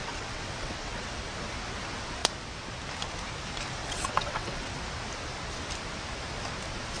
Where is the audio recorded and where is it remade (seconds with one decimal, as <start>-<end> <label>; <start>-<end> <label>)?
0.0-1.1 remade; 1.1-3.8 recorded; 3.8-4.8 remade; 4.8-7.0 recorded